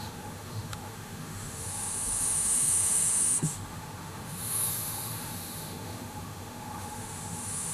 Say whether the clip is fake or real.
fake